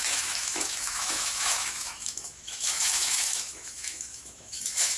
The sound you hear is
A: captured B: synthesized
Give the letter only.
B